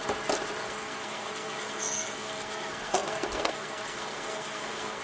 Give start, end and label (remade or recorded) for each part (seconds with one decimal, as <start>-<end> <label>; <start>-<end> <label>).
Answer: 0.0-0.6 recorded; 0.6-5.0 remade